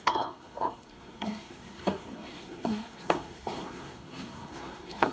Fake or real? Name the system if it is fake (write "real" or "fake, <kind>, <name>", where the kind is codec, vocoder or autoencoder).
fake, codec, SNAC